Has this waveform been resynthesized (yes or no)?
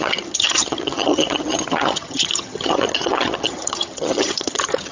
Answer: yes